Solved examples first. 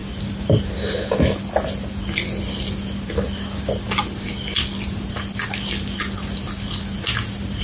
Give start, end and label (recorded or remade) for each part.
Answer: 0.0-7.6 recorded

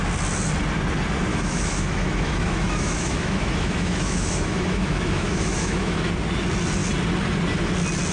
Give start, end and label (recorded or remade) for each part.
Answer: 0.0-1.3 recorded; 1.3-6.1 remade; 6.1-8.1 recorded